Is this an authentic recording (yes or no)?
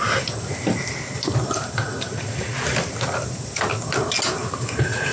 yes